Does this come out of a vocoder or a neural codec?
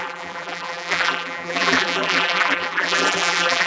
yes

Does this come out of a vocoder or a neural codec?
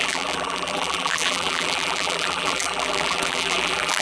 yes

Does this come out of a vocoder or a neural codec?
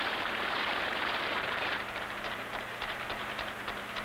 yes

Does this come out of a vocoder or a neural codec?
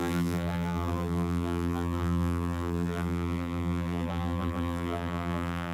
yes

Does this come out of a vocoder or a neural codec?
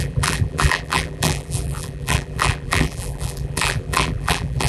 yes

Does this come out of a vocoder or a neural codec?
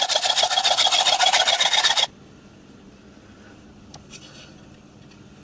no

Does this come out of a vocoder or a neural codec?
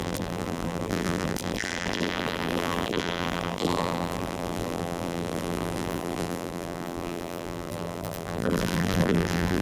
yes